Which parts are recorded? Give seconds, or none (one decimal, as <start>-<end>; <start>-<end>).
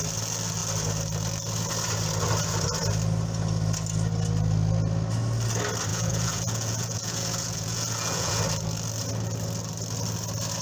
0.0-5.9; 8.4-10.6